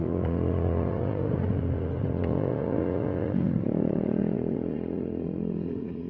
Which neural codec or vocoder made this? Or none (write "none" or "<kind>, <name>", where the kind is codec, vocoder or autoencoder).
vocoder, Vocos